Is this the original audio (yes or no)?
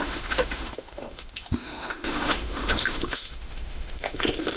no